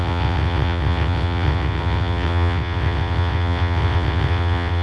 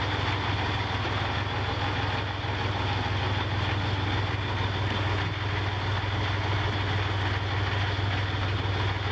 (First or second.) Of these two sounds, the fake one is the first